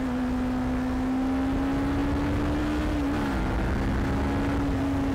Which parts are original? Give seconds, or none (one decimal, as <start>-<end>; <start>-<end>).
0.0-5.1